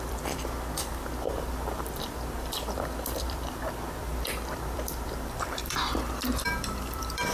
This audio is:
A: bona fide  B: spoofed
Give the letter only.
B